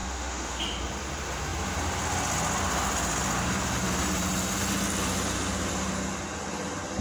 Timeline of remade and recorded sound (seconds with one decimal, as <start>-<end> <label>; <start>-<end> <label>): 0.0-0.6 remade; 0.6-7.0 recorded